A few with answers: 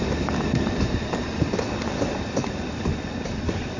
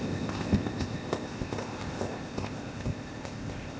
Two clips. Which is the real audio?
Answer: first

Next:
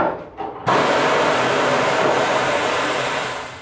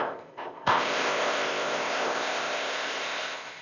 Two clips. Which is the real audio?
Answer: first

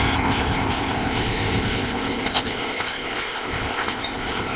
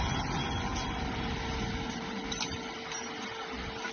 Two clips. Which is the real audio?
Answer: second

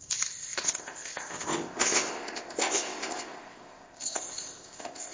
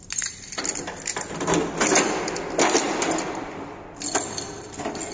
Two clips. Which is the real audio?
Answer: second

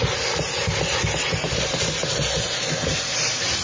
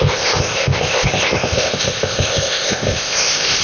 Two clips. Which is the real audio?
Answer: first